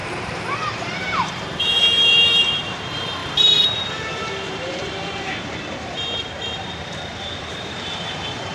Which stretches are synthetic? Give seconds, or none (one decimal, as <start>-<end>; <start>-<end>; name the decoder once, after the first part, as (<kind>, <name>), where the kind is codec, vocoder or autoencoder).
0.0-8.5 (vocoder, BigVGAN v2)